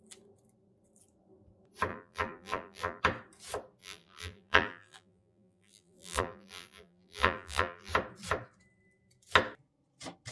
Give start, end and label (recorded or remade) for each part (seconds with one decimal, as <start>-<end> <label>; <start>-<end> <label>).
0.0-1.9 recorded; 1.9-3.0 remade; 3.0-3.8 recorded; 3.8-7.9 remade; 7.9-10.3 recorded